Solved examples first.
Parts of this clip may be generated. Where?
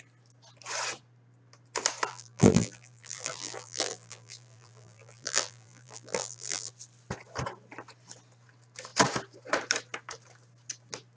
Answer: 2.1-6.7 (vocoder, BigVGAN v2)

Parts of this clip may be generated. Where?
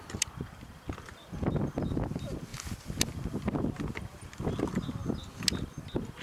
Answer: none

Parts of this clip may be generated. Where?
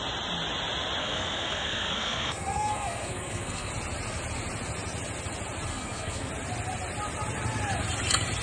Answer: 1.0-3.7 (codec, SNAC); 5.7-6.3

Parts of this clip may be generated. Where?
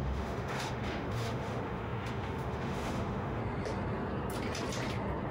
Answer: 0.0-3.4 (autoencoder, DAC-VAE)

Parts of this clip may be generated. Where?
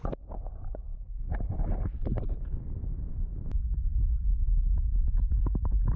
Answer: none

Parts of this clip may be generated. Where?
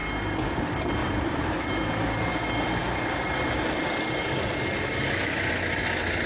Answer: 1.0-1.7 (vocoder, BigVGAN v2)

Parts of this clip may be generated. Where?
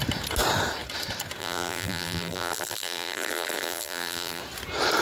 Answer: 1.4-4.4 (vocoder, BigVGAN v2)